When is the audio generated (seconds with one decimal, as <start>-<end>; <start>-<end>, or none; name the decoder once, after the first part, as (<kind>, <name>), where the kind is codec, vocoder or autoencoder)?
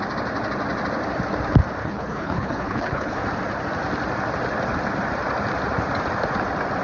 1.8-3.2 (codec, HILCodec)